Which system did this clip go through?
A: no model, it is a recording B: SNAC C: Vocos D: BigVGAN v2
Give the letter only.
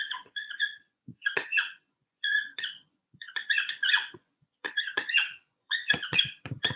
C